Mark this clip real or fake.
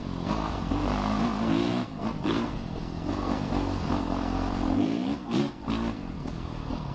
fake